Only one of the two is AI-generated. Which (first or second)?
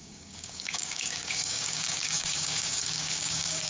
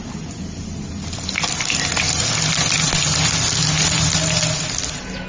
first